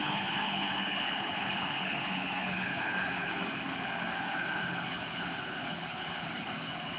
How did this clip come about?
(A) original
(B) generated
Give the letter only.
B